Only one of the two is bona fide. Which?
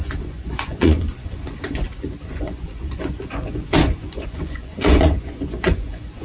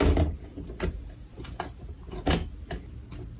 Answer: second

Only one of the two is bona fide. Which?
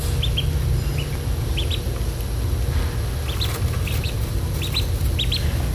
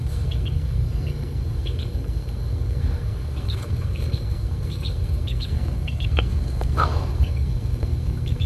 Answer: first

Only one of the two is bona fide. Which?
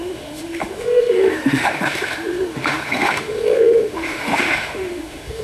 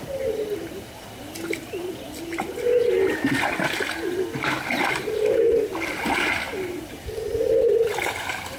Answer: second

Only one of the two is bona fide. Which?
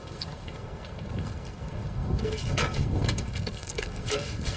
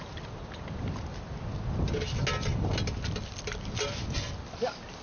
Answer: second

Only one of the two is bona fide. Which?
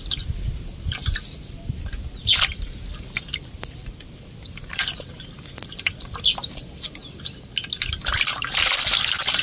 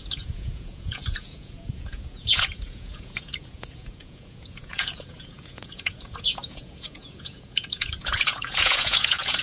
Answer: first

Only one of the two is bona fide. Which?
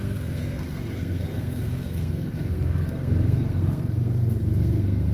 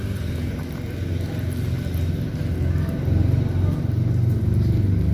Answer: second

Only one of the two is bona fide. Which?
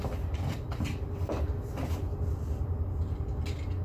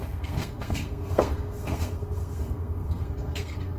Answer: first